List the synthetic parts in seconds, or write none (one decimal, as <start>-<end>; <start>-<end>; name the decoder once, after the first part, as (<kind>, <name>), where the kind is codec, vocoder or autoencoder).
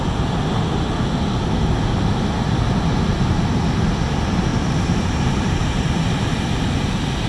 4.5-6.0 (vocoder, BigVGAN v2)